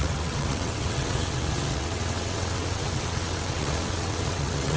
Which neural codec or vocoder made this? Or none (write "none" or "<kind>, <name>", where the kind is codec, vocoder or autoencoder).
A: vocoder, WaveNeXt